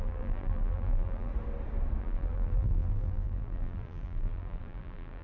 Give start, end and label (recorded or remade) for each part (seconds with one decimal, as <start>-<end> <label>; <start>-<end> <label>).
0.0-1.3 remade; 1.3-2.0 recorded; 2.0-5.2 remade